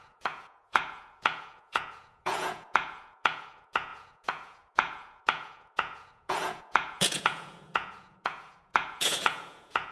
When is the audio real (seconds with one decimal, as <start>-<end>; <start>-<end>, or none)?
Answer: none